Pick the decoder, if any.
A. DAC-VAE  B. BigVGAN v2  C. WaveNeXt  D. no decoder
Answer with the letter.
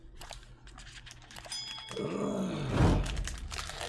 D